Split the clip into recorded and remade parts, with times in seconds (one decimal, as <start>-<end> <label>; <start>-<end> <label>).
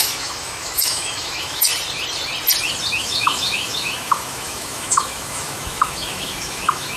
0.0-1.7 remade; 1.7-3.0 recorded; 3.0-7.0 remade